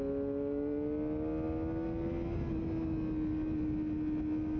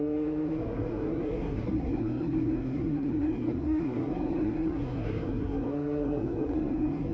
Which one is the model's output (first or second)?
second